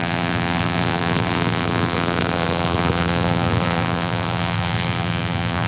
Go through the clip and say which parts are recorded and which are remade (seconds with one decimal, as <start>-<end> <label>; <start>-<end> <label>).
0.0-5.7 remade

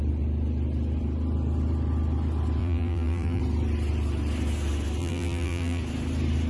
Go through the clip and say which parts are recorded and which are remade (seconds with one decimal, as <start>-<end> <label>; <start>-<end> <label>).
0.0-2.6 recorded; 2.6-3.4 remade; 3.4-5.0 recorded; 5.0-5.8 remade; 5.8-6.5 recorded

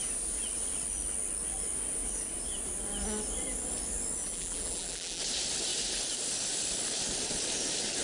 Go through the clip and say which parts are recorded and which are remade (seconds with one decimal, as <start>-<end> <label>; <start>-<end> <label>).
0.0-4.2 recorded; 4.2-5.2 remade; 5.2-8.0 recorded

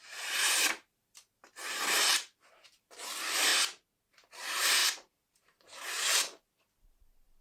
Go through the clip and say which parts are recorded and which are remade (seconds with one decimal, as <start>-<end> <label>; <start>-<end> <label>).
0.0-3.5 remade; 3.5-4.1 recorded; 4.1-7.4 remade

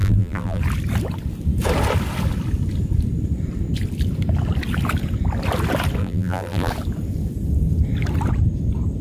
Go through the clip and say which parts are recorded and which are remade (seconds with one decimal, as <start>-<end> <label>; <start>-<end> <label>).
0.0-0.6 remade; 0.6-6.0 recorded; 6.0-6.7 remade; 6.7-9.0 recorded